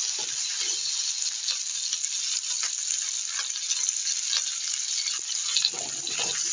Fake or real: real